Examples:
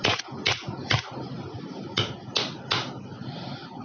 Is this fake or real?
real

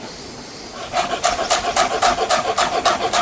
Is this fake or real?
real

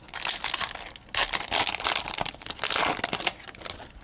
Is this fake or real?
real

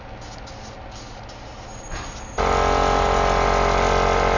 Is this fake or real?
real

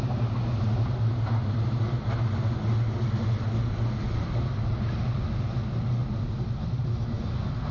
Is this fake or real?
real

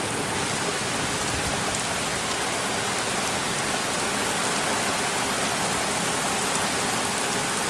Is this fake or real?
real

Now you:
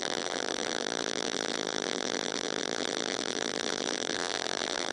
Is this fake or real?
fake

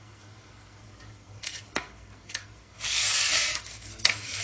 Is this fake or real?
fake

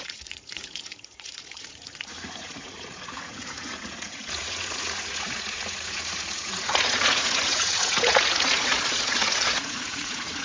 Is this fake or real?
fake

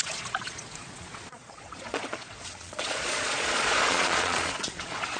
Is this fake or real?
fake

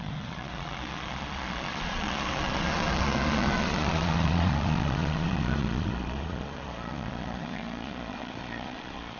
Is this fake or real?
fake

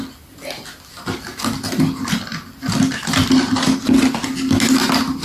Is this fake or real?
real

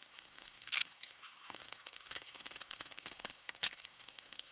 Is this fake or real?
fake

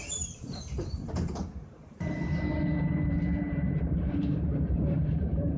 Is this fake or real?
fake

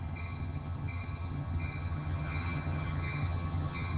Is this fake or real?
fake